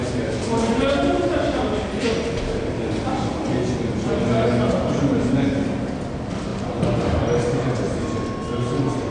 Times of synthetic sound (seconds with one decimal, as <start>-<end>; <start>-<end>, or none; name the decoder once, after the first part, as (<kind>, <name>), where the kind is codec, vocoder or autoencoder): none